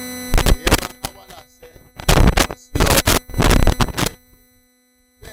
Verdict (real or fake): real